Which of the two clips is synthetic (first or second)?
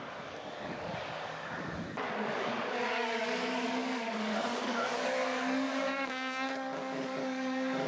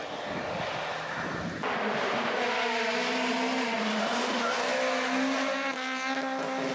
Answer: first